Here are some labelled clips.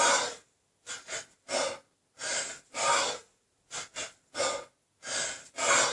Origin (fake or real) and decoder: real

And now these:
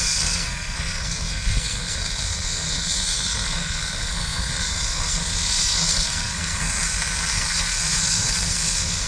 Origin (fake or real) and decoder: fake, codec, SNAC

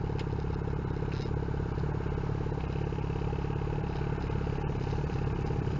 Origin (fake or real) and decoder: real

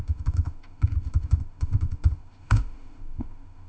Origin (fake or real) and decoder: fake, autoencoder, DAC-VAE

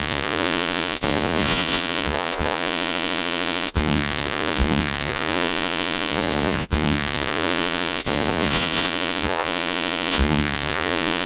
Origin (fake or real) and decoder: fake, vocoder, Vocos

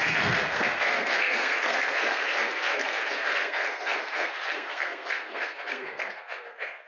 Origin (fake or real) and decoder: fake, codec, SNAC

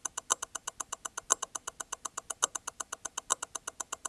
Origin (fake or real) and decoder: real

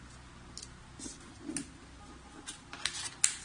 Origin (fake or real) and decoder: real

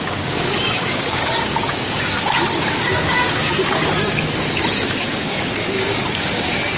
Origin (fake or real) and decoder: fake, codec, DAC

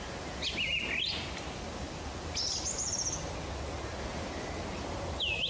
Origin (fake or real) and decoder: real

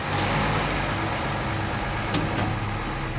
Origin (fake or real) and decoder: real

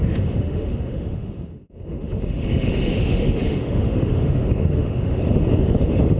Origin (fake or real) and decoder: fake, autoencoder, DAC-VAE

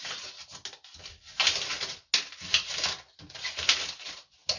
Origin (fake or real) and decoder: real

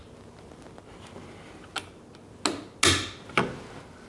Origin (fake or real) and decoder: real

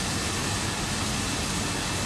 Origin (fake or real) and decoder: real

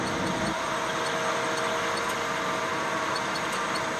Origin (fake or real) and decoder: real